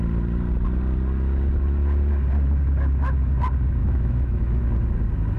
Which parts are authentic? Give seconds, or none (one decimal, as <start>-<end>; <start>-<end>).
0.0-3.8; 4.6-5.4